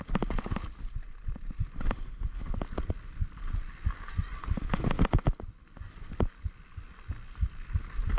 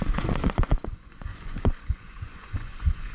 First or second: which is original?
first